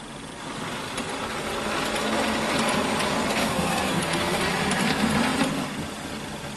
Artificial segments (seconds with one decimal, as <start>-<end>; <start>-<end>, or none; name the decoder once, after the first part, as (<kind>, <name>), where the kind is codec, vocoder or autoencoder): 3.4-4.4 (codec, SNAC)